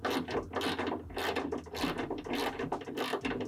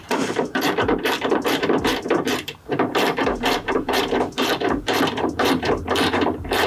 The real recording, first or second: first